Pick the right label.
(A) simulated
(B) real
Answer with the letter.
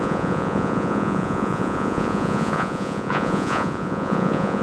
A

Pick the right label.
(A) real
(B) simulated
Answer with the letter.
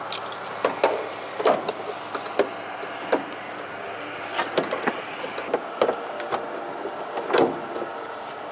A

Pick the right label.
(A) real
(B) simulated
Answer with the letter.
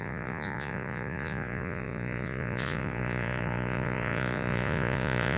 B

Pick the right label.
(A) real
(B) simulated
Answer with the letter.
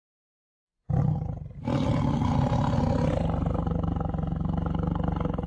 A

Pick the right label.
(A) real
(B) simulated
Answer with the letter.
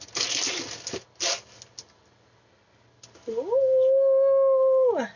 A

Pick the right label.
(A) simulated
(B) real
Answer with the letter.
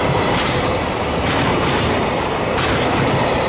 B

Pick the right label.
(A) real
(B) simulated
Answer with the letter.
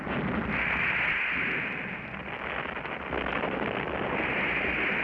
A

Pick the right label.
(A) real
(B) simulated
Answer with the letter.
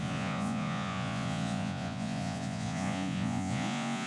B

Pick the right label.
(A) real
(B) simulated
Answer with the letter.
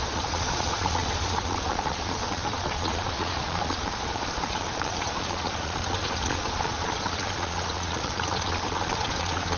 B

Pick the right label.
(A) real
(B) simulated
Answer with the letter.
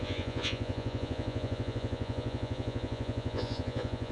B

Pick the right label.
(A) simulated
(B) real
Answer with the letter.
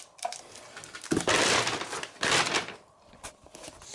B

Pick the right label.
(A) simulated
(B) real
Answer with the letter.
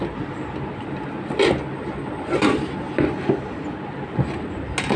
B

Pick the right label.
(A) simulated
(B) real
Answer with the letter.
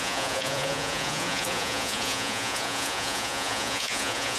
A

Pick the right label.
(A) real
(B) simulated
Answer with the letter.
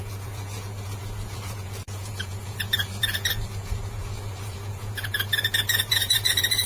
B